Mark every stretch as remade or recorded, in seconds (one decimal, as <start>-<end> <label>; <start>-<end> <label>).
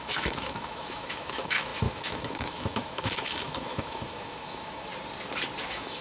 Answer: 0.0-4.9 remade; 4.9-5.6 recorded; 5.6-6.0 remade